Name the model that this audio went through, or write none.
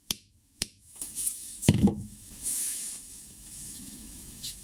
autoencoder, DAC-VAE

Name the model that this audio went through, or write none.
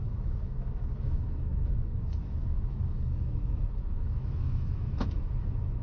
autoencoder, DAC-VAE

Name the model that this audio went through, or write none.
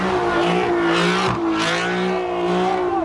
none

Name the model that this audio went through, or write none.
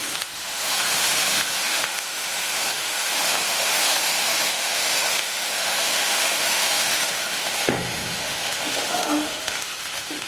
autoencoder, DAC-VAE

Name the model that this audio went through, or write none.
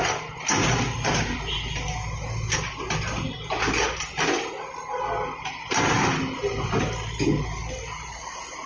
none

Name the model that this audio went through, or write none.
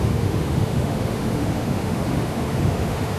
autoencoder, DAC-VAE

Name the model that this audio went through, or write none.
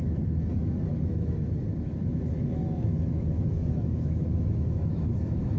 autoencoder, DAC-VAE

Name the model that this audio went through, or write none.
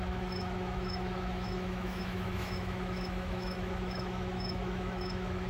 autoencoder, DAC-VAE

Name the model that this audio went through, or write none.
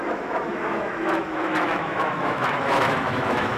autoencoder, DAC-VAE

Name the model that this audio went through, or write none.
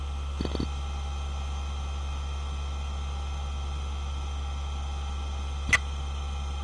none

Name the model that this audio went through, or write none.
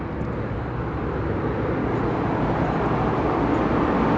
none